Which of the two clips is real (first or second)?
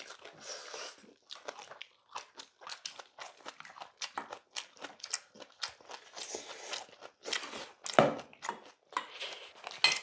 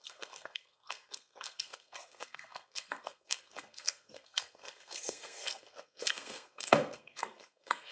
first